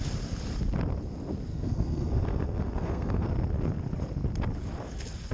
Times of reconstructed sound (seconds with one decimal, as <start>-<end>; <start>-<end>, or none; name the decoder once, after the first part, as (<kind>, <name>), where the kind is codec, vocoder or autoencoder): 1.5-3.3 (codec, SNAC)